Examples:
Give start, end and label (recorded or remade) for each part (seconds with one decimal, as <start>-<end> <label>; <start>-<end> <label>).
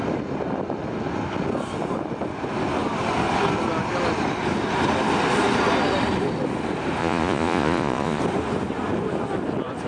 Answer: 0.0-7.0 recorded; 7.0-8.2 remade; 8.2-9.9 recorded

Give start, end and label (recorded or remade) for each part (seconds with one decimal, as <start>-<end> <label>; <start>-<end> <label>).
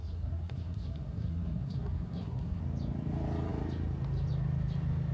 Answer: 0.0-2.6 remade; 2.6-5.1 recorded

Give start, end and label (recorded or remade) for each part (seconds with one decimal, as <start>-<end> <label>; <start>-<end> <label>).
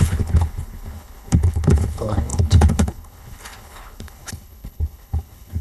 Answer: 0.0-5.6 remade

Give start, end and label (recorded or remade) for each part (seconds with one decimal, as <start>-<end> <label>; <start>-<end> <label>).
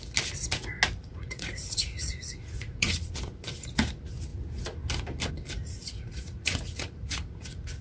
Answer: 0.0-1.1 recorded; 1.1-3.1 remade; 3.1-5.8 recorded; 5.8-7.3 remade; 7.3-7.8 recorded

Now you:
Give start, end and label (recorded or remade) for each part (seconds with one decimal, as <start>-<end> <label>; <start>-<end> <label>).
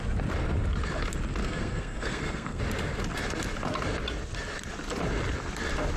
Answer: 0.0-1.4 recorded; 1.4-2.6 remade; 2.6-6.0 recorded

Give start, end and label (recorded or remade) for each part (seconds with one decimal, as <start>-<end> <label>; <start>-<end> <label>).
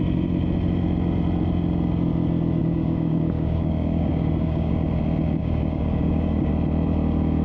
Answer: 0.0-2.6 recorded; 2.6-4.7 remade; 4.7-5.4 recorded; 5.4-6.5 remade; 6.5-7.4 recorded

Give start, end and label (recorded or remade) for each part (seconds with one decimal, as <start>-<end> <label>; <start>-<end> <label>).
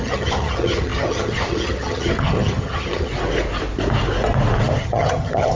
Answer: 0.0-3.1 remade; 3.1-4.8 recorded; 4.8-5.6 remade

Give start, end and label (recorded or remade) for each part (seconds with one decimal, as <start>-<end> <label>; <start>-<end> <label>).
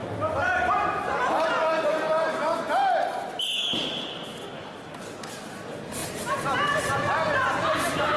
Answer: 0.0-8.2 recorded